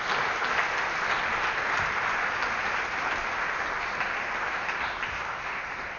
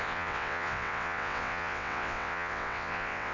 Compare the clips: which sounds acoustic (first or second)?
first